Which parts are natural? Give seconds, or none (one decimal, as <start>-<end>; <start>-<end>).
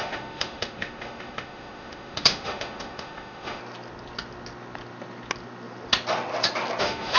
3.6-6.8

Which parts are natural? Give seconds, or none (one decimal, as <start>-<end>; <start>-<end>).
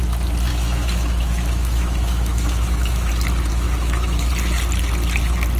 0.0-0.5; 3.1-3.5; 4.3-5.6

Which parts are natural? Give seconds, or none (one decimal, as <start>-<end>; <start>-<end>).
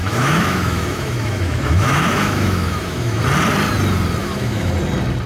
3.2-4.2; 4.7-5.3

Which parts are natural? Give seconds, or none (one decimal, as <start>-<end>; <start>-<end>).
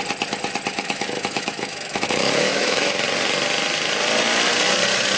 0.0-0.7; 2.9-5.2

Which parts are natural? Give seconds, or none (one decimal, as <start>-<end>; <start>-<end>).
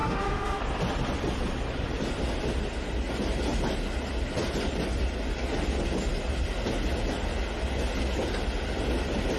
0.6-9.4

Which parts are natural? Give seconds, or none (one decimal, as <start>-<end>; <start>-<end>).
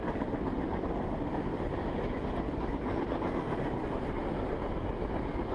0.0-5.5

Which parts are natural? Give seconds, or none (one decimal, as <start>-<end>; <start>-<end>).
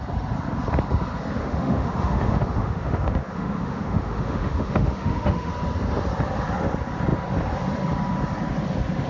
0.0-1.4; 5.5-9.1